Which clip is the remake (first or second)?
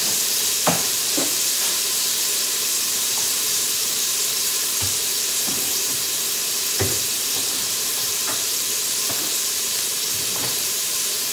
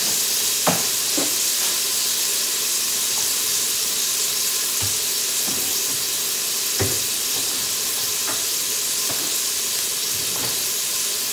first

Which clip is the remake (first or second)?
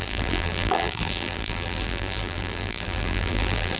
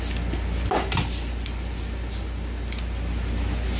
first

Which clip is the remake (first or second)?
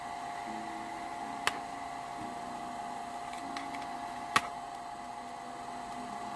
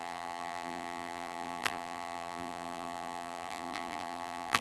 second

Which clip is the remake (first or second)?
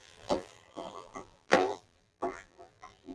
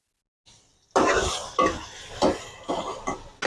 first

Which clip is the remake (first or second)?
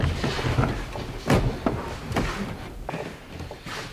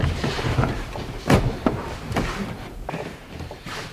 second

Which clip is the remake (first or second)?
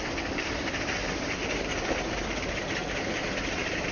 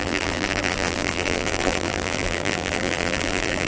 second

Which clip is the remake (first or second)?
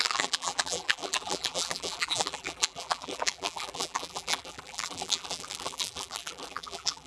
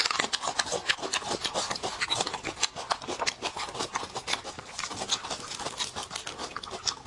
first